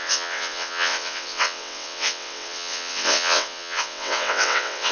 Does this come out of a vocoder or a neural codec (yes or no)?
yes